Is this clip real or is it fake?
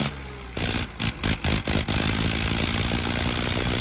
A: real